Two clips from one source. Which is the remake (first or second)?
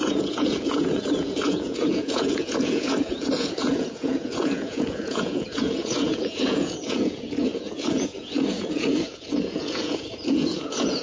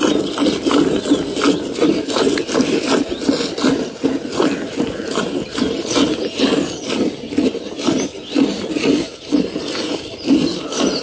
first